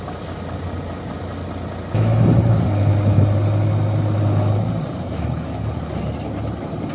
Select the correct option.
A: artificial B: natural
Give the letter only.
B